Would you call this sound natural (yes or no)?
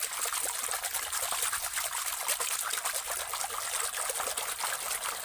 yes